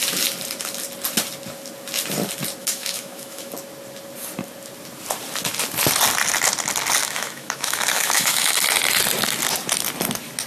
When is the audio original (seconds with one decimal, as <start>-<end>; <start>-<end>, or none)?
0.0-2.6; 3.5-7.0; 8.5-10.5